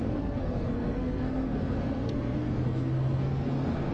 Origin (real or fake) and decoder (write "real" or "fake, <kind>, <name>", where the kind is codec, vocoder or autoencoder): fake, codec, SNAC